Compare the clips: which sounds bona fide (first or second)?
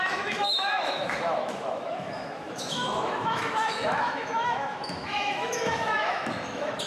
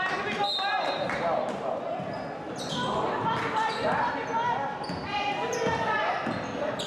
second